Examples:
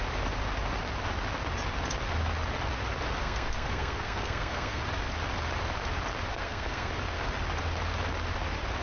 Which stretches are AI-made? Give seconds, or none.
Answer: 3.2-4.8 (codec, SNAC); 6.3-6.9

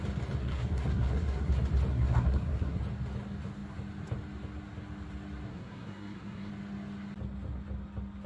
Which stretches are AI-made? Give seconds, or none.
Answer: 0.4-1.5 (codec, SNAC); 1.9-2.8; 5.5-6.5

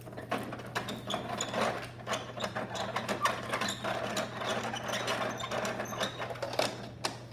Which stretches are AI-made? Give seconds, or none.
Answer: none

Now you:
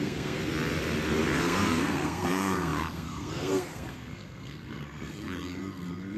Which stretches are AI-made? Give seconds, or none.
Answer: 0.0-0.4 (codec, SNAC); 1.4-6.2

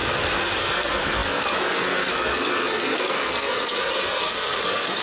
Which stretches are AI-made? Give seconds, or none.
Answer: 0.6-5.0 (codec, SNAC)

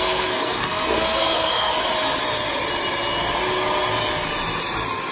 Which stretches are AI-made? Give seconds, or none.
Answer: 0.0-1.7 (codec, SNAC)

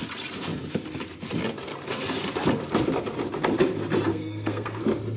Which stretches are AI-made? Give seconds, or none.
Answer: 4.1-4.8 (codec, SNAC)